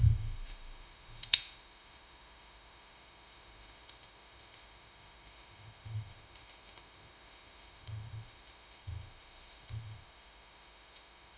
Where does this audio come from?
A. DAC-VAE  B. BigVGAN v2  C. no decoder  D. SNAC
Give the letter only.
A